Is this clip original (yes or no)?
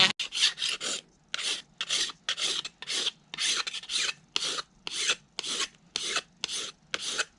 yes